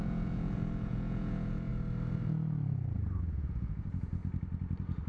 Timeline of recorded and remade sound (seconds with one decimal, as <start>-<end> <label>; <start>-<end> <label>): 0.0-1.7 remade; 1.7-3.2 recorded; 3.2-4.2 remade; 4.2-5.1 recorded